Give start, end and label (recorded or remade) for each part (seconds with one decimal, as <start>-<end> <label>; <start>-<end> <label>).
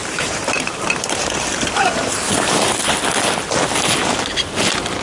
0.0-3.0 remade; 3.0-5.0 recorded